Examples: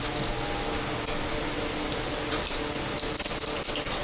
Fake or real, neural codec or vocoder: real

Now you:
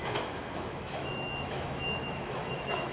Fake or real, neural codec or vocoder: fake, autoencoder, DAC-VAE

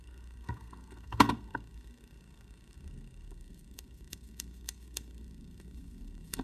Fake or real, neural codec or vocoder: fake, codec, SNAC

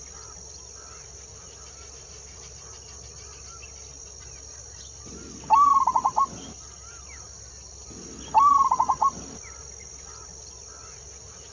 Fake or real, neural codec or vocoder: real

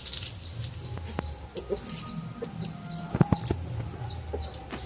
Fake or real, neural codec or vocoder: real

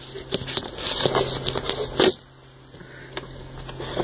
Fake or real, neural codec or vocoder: real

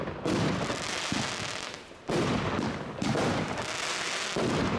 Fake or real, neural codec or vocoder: real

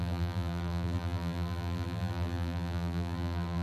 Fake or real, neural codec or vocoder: fake, vocoder, BigVGAN v2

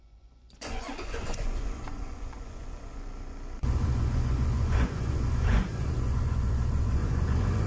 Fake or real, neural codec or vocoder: fake, vocoder, Vocos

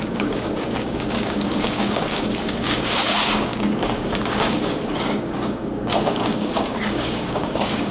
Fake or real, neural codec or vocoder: fake, codec, DAC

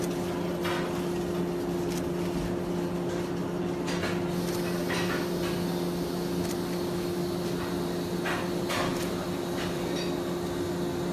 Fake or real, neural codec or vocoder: real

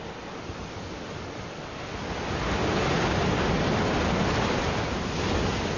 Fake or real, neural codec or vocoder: real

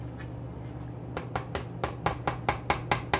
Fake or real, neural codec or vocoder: real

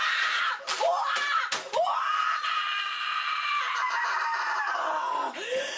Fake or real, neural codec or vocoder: real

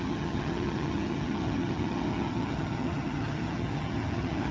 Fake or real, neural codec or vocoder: fake, vocoder, HiFi-GAN